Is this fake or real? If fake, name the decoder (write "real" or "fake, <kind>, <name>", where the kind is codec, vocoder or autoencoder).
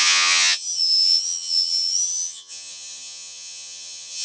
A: fake, vocoder, HiFi-GAN